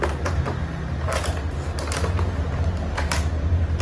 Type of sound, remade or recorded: recorded